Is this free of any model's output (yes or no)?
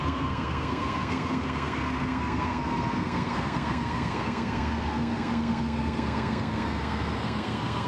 no